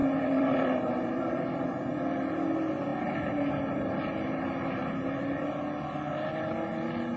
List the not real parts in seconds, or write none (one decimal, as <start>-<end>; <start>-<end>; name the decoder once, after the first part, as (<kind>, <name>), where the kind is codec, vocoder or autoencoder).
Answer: 0.0-1.9 (vocoder, BigVGAN v2)